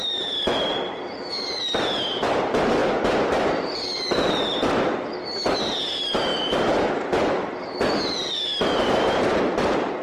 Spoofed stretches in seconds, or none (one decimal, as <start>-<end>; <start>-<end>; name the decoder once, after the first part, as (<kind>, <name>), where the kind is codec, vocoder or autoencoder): 2.8-4.4 (vocoder, BigVGAN v2); 6.3-6.9; 8.2-10.0

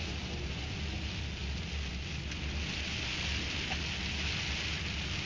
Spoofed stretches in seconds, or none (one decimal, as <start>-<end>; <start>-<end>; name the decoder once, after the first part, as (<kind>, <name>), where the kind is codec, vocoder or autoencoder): none